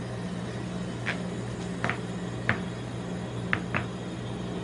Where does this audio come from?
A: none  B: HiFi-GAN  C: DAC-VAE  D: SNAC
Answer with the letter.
A